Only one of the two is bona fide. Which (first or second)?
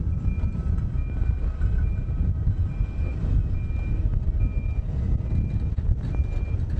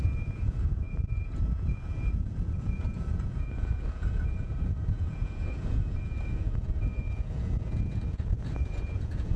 first